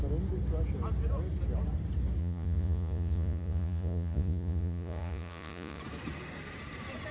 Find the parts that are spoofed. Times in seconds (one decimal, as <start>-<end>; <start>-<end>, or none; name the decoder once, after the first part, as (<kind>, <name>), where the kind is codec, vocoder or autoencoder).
2.2-5.8 (vocoder, Vocos)